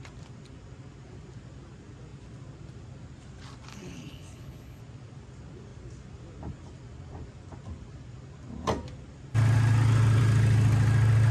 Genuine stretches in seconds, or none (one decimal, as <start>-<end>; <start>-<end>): 0.0-3.7; 4.8-11.3